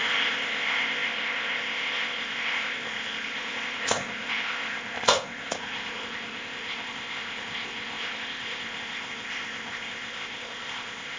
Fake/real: fake